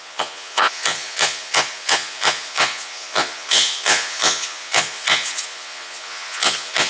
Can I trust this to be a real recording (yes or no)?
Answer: no